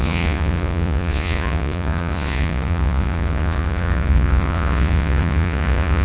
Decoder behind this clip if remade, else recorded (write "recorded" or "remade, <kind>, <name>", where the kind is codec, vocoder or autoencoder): remade, vocoder, Vocos